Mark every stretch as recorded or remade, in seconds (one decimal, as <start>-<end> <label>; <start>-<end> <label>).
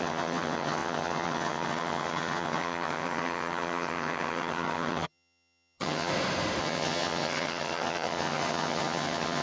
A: 0.0-6.1 remade; 6.1-6.6 recorded; 6.6-9.4 remade